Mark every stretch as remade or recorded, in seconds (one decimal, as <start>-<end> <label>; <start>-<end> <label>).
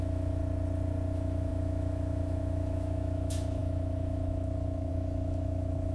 0.0-0.4 remade; 0.4-1.1 recorded; 1.1-5.9 remade